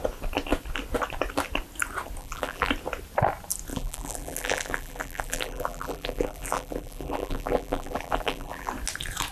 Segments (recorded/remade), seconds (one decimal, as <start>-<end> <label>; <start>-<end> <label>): 0.0-2.2 recorded; 2.2-2.7 remade; 2.7-3.7 recorded; 3.7-8.7 remade; 8.7-9.3 recorded